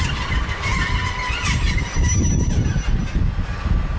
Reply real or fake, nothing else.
real